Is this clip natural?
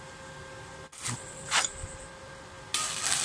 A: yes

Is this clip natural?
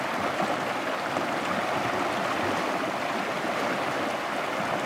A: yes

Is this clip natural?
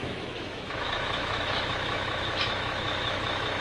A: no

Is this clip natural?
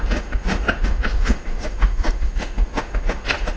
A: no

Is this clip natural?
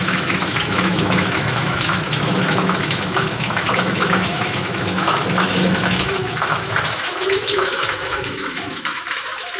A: no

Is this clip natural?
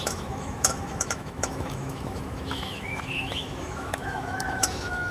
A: no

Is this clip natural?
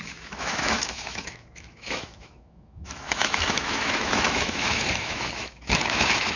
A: no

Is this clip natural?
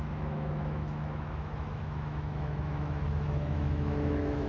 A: no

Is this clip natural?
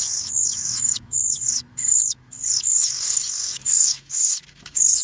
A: no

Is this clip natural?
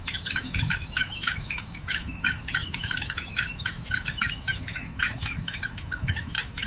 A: no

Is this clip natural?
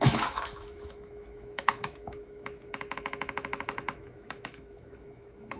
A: no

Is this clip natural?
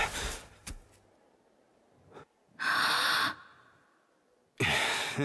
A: yes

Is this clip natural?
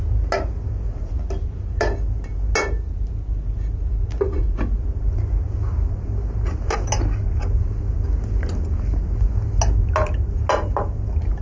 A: yes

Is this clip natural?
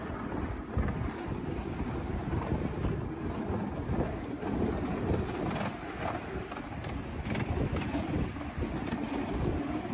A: yes